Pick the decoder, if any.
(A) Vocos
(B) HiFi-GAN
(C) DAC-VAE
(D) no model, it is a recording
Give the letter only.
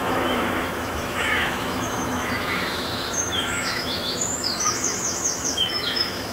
C